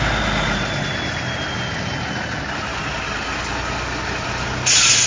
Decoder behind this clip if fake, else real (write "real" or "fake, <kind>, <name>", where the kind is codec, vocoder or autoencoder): real